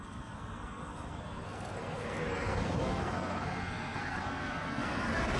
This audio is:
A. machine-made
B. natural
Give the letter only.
A